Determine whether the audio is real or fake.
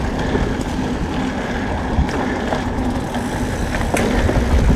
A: real